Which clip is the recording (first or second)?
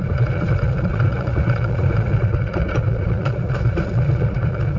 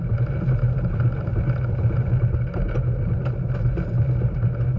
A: second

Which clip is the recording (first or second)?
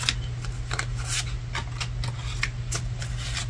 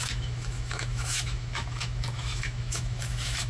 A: first